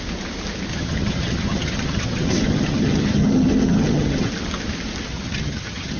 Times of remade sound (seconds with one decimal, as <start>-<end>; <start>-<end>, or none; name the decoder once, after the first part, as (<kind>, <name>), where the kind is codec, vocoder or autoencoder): 0.7-4.3 (vocoder, HiFi-GAN); 5.1-6.0